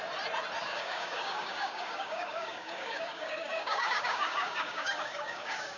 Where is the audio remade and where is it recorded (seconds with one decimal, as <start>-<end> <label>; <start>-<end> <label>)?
0.0-0.6 recorded; 0.6-5.8 remade